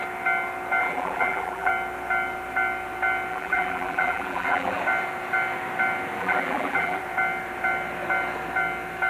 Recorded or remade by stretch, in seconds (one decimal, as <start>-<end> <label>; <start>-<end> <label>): 0.0-0.8 recorded; 0.8-1.7 remade; 1.7-3.3 recorded; 3.3-4.8 remade; 4.8-6.2 recorded; 6.2-7.0 remade; 7.0-9.1 recorded